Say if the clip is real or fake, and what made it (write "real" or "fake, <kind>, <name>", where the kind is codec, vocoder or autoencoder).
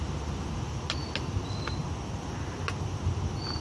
real